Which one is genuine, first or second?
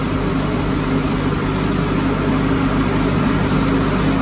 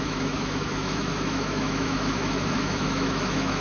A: first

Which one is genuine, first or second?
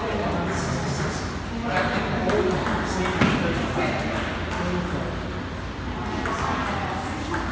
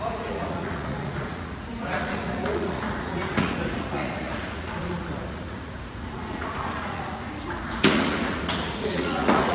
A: first